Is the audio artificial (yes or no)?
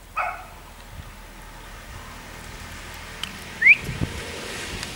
no